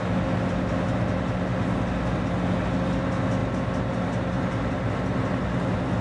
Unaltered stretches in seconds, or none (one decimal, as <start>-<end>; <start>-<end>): 0.0-6.0